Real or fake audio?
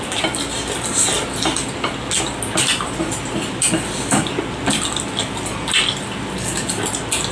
real